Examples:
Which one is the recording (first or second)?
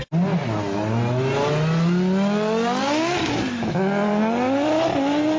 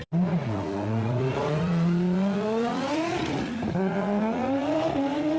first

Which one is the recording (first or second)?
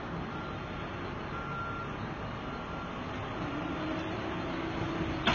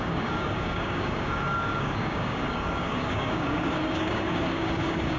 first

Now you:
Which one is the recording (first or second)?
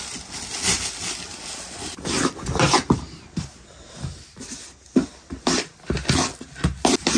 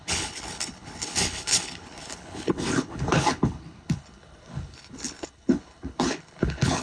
first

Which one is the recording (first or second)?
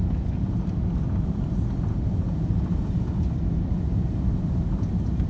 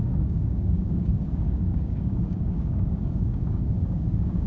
first